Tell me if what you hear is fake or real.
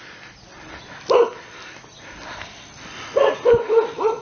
real